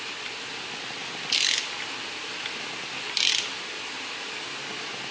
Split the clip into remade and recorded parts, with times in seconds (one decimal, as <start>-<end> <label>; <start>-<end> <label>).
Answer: 0.0-1.0 recorded; 1.0-3.6 remade; 3.6-5.1 recorded